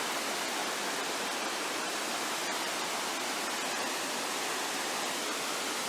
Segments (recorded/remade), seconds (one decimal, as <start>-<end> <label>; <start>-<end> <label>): 0.0-0.6 recorded; 0.6-1.4 remade; 1.4-5.9 recorded